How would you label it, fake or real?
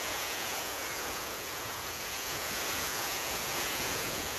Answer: fake